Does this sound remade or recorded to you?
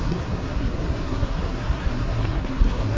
remade